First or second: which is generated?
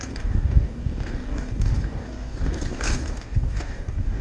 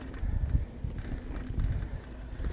first